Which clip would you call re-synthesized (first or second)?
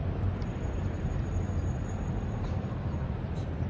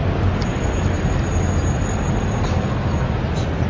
first